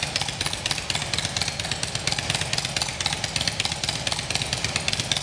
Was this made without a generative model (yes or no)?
no